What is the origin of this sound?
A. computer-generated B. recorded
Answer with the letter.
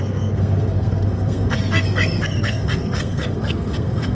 A